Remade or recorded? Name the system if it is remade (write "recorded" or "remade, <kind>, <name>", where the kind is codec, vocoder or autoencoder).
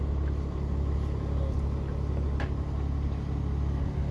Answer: recorded